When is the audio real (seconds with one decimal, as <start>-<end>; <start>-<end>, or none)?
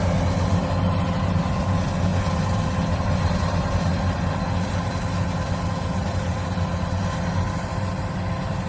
0.0-8.7